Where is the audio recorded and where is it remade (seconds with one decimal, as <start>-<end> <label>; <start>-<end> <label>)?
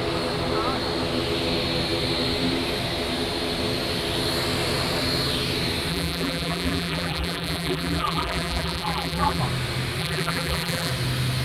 0.0-5.9 recorded; 5.9-9.4 remade; 9.4-10.0 recorded; 10.0-10.9 remade; 10.9-11.4 recorded